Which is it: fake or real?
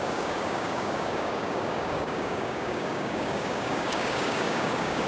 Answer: fake